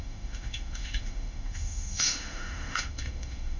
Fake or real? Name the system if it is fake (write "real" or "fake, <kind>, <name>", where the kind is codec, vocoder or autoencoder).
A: fake, autoencoder, DAC-VAE